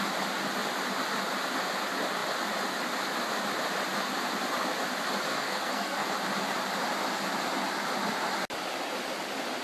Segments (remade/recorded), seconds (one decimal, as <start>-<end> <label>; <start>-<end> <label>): 0.0-5.3 recorded; 5.3-6.1 remade; 6.1-9.6 recorded